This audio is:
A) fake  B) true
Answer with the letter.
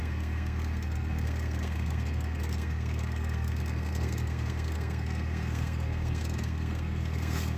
A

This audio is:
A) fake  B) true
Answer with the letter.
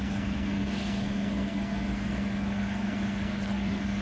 A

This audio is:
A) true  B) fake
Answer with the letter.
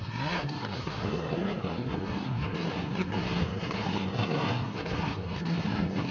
B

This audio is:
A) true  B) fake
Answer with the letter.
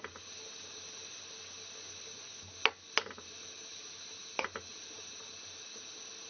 A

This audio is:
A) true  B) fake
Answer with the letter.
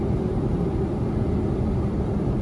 A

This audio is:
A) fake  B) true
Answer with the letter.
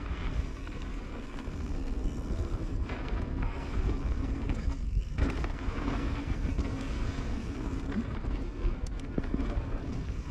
A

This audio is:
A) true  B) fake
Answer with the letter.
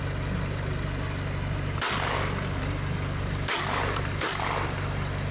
A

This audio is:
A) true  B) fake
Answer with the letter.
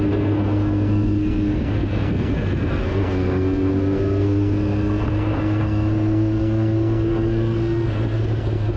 B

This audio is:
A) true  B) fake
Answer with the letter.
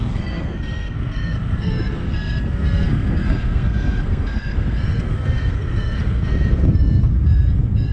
B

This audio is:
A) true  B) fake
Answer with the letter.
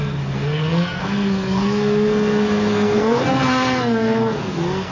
B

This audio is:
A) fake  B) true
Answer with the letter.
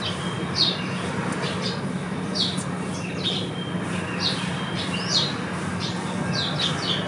B